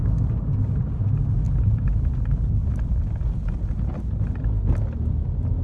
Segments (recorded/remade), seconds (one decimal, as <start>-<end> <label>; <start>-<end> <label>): 0.0-5.6 recorded